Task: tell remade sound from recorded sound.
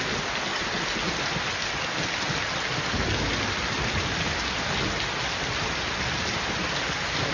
recorded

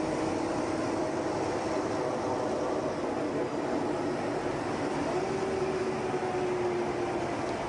recorded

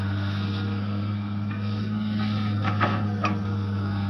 remade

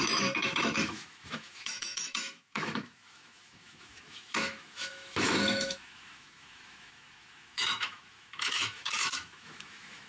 remade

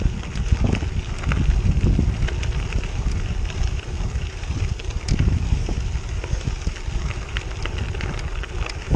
recorded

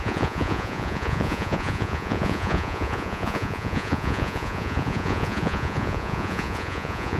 remade